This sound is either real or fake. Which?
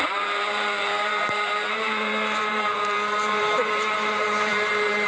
fake